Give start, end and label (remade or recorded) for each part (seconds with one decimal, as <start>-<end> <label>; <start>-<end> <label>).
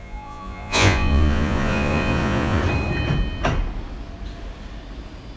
0.0-2.6 remade; 2.6-5.4 recorded